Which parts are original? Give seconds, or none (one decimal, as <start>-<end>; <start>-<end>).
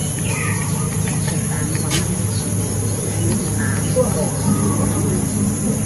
0.0-5.9